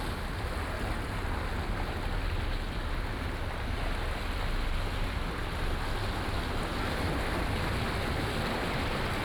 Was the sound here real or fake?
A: real